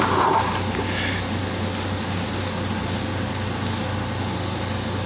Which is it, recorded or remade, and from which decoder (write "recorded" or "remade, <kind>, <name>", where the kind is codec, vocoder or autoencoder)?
recorded